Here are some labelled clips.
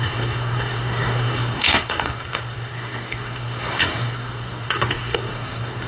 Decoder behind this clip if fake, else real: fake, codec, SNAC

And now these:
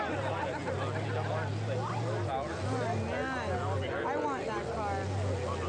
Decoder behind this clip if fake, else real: real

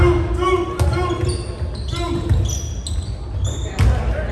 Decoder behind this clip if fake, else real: real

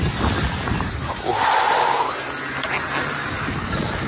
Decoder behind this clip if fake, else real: real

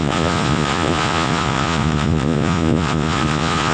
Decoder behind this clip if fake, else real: fake, vocoder, Vocos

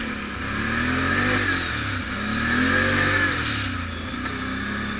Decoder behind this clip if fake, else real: real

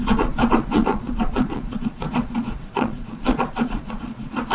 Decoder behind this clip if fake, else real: fake, vocoder, Vocos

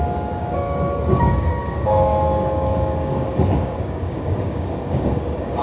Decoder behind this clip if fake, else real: fake, codec, DAC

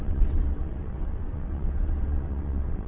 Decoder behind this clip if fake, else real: fake, vocoder, WaveNeXt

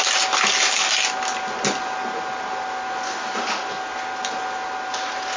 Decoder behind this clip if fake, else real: real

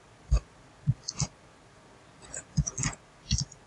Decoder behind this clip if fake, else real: real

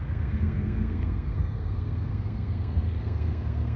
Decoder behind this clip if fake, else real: fake, codec, SNAC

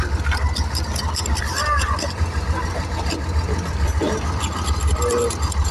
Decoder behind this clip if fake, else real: real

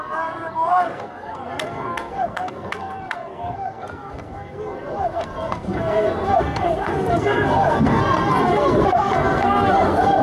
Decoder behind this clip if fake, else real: fake, codec, SNAC